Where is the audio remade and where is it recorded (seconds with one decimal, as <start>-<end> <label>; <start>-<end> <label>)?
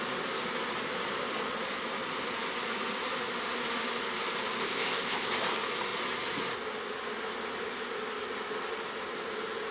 0.0-4.6 recorded; 4.6-5.3 remade; 5.3-9.7 recorded